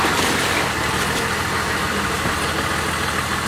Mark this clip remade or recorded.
recorded